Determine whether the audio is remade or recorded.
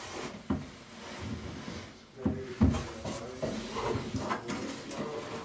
recorded